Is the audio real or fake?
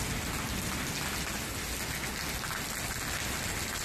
real